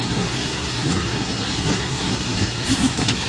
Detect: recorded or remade remade